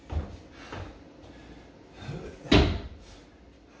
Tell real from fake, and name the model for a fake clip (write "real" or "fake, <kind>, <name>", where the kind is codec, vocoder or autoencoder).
real